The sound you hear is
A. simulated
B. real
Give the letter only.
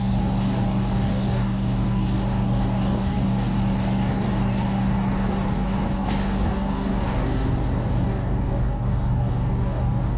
A